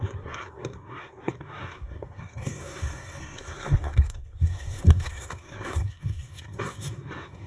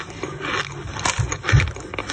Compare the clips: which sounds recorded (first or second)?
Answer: second